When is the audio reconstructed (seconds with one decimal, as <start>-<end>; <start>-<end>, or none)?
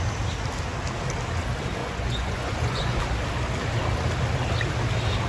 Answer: 1.8-3.0